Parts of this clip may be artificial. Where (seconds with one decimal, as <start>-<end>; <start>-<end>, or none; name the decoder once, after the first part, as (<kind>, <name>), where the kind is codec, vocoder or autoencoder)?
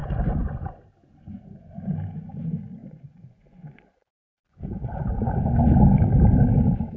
0.0-0.8 (vocoder, Vocos); 2.8-5.2